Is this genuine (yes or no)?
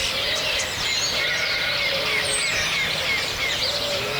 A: yes